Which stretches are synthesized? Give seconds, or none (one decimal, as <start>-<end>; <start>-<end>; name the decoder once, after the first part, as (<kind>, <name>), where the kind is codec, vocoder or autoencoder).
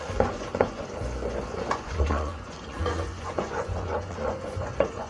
0.0-5.1 (vocoder, Vocos)